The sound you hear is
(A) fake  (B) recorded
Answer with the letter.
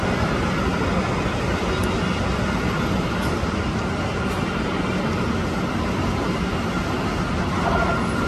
B